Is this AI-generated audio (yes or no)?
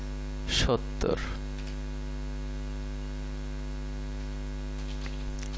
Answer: no